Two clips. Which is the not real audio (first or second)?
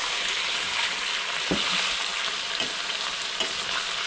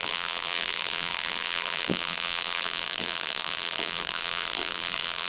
second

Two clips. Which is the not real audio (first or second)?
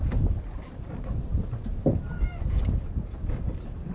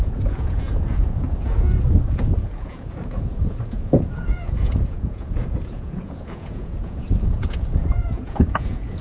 second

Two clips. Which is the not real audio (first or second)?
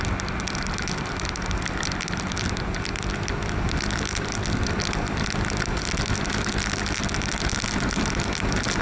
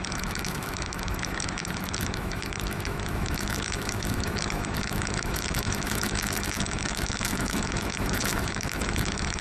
second